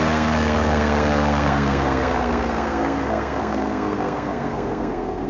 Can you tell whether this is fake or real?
fake